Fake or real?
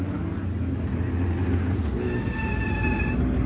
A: real